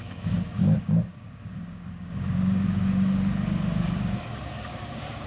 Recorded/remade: remade